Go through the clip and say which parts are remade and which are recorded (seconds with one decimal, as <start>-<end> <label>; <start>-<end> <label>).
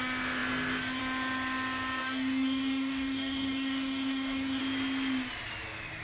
0.0-2.0 recorded; 2.0-4.6 remade; 4.6-6.0 recorded